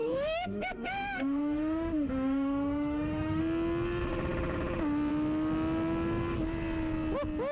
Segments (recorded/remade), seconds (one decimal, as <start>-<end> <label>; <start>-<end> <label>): 0.0-3.4 remade; 3.4-7.5 recorded